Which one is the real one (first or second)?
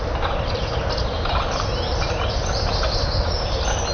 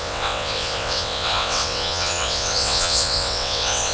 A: first